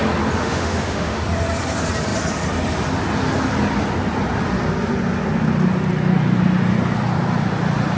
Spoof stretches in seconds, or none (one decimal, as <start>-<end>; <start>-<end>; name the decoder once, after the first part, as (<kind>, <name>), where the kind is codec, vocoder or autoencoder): 0.4-1.2 (autoencoder, DAC-VAE)